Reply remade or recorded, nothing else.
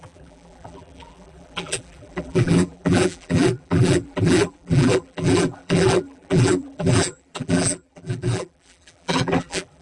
remade